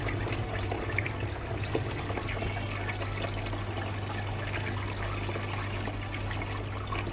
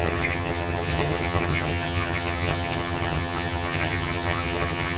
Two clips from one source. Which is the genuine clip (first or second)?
first